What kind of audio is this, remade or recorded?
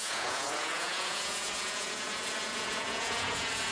remade